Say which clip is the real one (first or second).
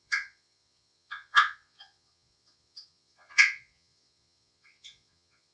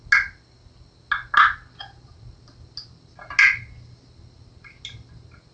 second